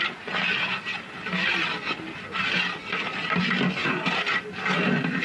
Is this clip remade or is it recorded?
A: recorded